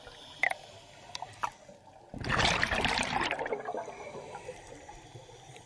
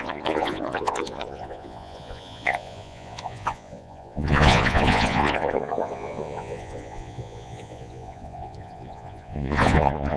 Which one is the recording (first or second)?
first